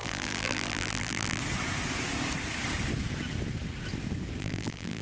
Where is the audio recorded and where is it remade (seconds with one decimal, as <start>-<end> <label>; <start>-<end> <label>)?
0.0-1.4 remade; 1.4-4.4 recorded; 4.4-5.0 remade